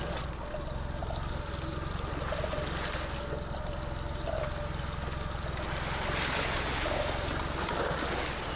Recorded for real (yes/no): yes